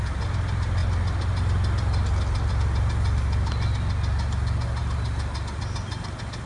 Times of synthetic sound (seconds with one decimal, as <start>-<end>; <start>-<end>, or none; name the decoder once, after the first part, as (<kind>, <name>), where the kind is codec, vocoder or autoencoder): none